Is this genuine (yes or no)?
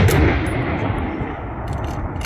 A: yes